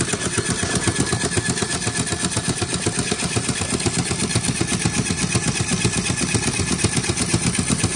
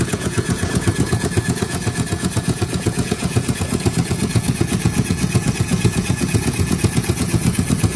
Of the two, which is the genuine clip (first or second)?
first